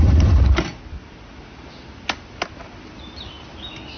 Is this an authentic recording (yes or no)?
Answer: yes